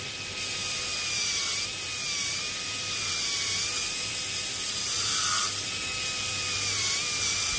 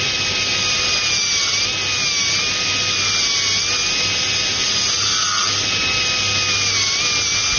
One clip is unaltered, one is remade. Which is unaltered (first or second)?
second